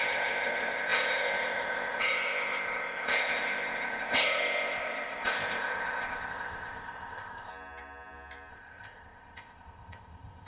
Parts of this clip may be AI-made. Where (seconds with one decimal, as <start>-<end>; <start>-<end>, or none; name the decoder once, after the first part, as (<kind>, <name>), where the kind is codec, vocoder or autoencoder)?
0.0-7.5 (codec, ZipCodec); 8.5-10.5